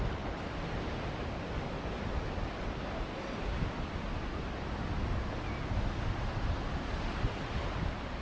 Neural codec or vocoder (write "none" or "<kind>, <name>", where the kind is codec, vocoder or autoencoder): none